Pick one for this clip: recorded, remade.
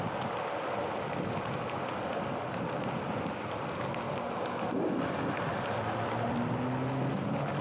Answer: recorded